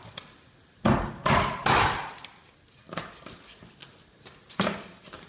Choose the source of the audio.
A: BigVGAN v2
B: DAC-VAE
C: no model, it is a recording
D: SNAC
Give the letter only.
C